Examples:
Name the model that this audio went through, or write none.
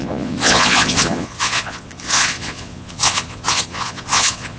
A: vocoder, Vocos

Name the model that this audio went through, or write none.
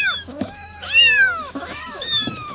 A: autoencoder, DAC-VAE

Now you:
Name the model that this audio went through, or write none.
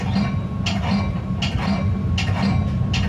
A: none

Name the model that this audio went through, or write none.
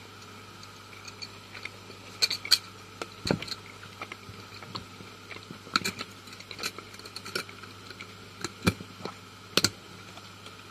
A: none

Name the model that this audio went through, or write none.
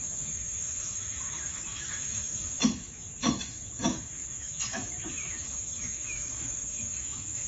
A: autoencoder, DAC-VAE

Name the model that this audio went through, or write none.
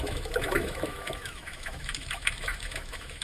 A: autoencoder, DAC-VAE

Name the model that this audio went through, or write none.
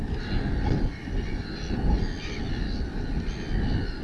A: none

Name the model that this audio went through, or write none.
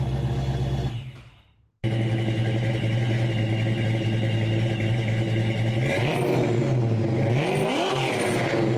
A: none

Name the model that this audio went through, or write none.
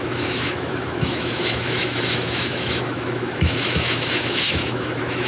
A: autoencoder, DAC-VAE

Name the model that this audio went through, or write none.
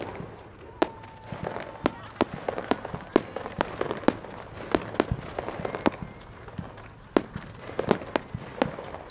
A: none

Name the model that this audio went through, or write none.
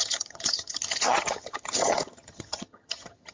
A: vocoder, HiFi-GAN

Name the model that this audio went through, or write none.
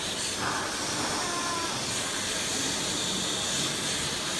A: none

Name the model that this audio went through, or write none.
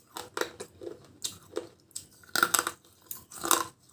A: none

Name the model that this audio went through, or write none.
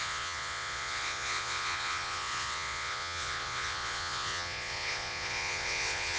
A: vocoder, Vocos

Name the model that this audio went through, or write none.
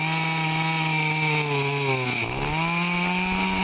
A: none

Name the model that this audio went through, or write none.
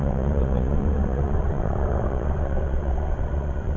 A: vocoder, WaveNeXt